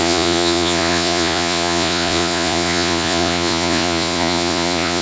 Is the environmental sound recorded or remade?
remade